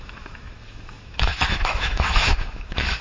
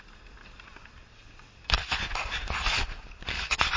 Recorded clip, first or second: second